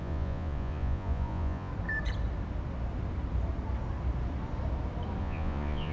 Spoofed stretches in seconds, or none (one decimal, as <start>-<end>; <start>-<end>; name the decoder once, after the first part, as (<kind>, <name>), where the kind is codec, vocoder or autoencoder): 0.0-1.7 (vocoder, Vocos); 5.2-5.9